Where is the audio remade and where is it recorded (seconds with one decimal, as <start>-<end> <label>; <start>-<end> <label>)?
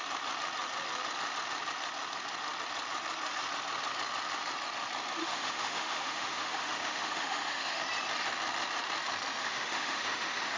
0.0-5.2 recorded; 5.2-7.8 remade; 7.8-9.4 recorded; 9.4-10.6 remade